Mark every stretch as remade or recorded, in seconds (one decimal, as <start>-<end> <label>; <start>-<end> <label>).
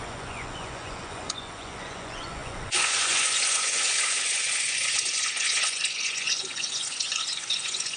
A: 0.0-8.0 remade